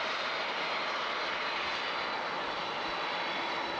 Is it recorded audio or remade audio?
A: recorded